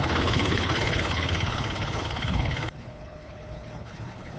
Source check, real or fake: fake